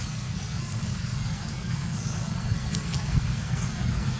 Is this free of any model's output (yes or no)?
no